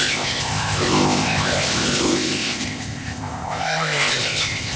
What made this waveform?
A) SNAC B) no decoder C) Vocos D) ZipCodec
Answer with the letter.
D